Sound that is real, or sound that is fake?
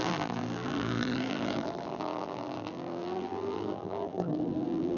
fake